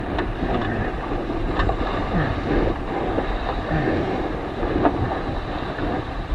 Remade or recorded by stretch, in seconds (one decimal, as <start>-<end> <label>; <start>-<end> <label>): 0.0-3.6 remade; 3.6-5.3 recorded; 5.3-6.3 remade